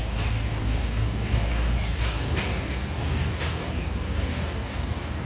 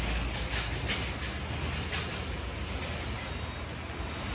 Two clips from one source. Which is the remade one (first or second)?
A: first